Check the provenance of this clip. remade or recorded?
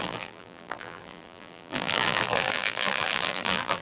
remade